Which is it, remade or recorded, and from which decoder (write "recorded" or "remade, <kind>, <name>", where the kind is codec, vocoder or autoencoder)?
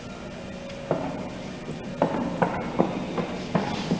recorded